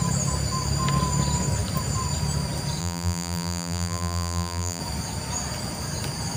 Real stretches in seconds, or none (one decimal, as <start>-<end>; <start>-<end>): 0.0-2.8; 4.8-6.4